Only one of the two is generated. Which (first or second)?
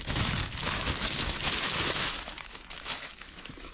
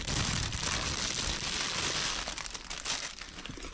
first